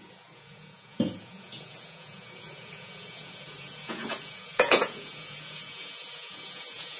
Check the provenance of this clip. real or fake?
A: fake